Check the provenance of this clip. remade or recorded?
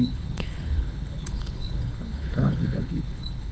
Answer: remade